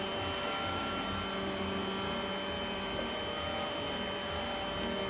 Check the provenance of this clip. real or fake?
real